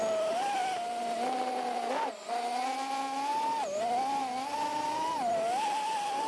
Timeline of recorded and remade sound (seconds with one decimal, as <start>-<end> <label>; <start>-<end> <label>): 0.0-6.3 recorded